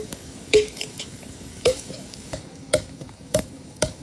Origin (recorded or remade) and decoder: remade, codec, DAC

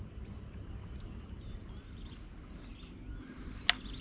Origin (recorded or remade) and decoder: recorded